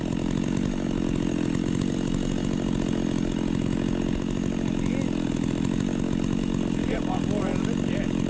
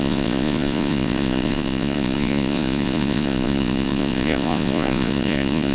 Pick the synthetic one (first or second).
second